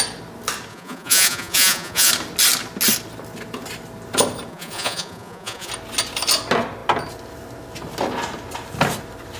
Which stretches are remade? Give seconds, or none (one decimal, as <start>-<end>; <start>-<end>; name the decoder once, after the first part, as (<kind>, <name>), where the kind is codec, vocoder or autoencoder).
0.7-2.1 (vocoder, Vocos); 4.5-5.7

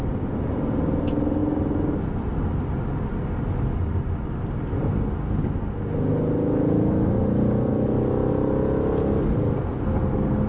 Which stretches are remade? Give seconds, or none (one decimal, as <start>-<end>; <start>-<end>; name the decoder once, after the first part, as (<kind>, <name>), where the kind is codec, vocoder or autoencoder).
none

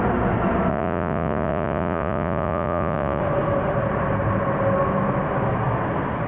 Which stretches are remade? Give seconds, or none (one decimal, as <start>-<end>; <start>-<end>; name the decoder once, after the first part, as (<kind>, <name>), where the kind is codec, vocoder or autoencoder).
0.7-3.2 (vocoder, Vocos)

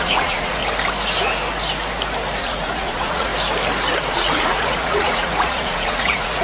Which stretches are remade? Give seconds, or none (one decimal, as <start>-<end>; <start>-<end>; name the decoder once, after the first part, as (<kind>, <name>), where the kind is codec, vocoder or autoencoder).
0.0-0.6 (vocoder, Vocos); 2.4-3.3; 4.1-6.4

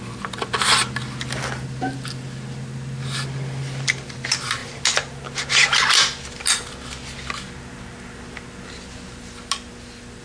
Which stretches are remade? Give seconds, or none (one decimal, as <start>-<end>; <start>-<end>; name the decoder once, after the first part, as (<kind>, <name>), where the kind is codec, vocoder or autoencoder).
none

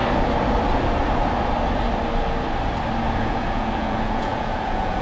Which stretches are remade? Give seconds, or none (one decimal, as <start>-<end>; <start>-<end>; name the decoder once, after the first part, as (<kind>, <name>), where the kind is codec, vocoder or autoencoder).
3.0-5.0 (vocoder, Vocos)

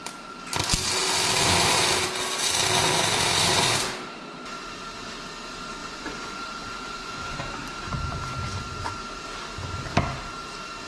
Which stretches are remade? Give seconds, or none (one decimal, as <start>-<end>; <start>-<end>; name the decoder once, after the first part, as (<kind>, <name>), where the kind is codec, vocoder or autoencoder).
5.8-7.4 (vocoder, Vocos)